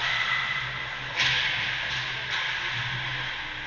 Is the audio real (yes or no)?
yes